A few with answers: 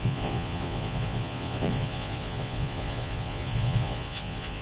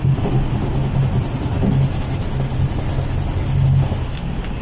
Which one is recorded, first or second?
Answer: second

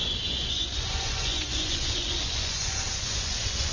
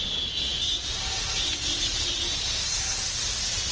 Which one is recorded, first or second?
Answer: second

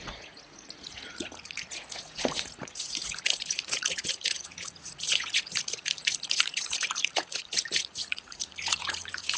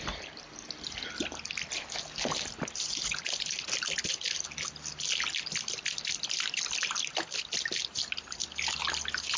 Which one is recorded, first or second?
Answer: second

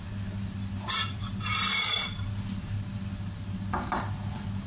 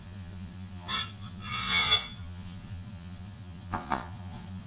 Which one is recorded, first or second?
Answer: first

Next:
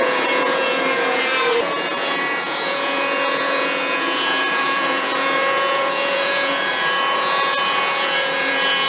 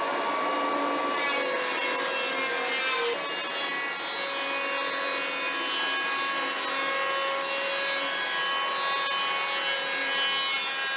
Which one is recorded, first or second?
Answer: second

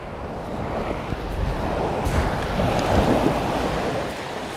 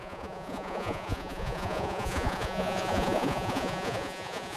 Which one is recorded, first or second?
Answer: first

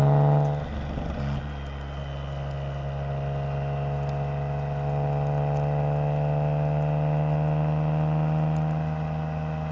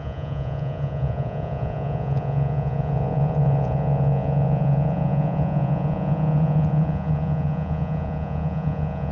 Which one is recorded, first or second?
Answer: first